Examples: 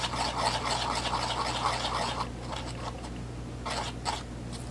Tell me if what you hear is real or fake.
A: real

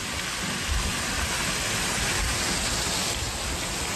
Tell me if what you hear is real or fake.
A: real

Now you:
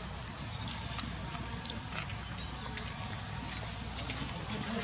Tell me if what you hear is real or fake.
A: real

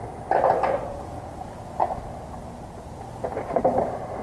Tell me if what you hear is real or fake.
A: real